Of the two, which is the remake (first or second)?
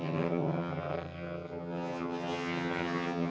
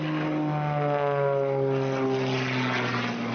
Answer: first